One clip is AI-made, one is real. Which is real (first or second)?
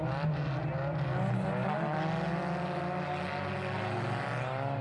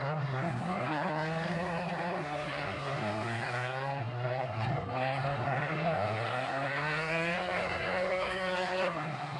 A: first